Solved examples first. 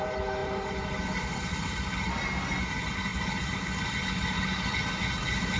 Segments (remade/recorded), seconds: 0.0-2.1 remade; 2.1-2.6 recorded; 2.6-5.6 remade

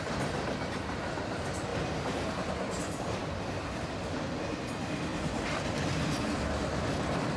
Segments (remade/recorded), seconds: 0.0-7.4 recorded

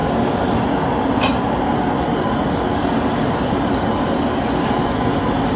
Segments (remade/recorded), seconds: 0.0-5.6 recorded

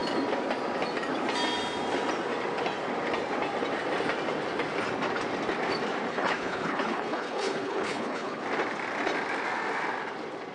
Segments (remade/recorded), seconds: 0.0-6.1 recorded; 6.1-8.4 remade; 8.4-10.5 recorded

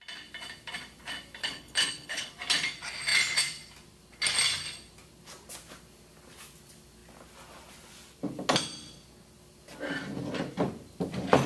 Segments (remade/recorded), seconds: 0.0-1.4 recorded; 1.4-2.3 remade; 2.3-11.5 recorded

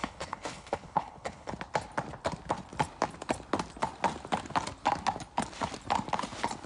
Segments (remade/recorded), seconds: 0.0-1.5 remade; 1.5-6.7 recorded